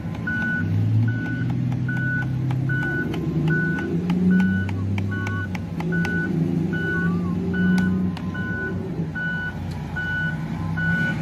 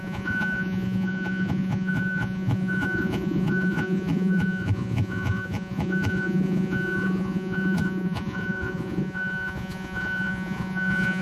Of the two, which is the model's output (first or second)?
second